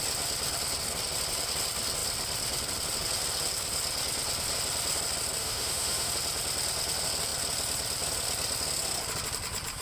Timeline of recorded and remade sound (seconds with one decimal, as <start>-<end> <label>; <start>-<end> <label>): 0.0-5.4 recorded; 5.4-6.1 remade; 6.1-9.8 recorded